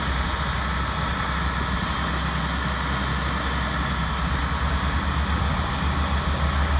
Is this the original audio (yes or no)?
yes